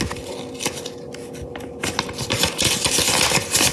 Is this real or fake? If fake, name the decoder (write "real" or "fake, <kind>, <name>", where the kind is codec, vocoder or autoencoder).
real